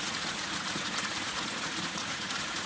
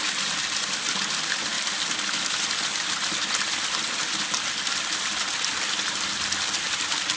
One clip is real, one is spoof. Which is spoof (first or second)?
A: first